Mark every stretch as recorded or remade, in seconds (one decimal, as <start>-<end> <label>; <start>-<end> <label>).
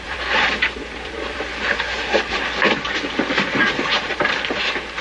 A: 0.0-1.5 remade; 1.5-3.7 recorded; 3.7-5.0 remade